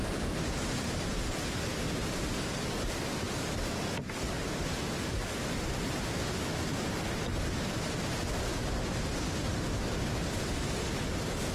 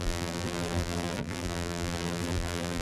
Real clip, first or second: first